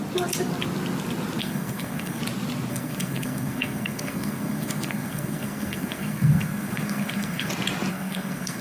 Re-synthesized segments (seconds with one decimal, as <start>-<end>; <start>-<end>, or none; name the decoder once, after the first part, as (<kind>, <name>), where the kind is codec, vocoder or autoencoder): 1.4-2.2 (codec, SNAC); 2.7-7.5; 7.9-8.6